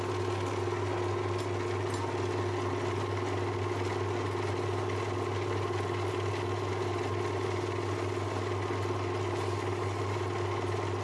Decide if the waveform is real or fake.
real